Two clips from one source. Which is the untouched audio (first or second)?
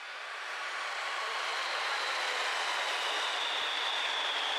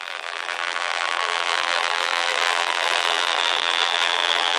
first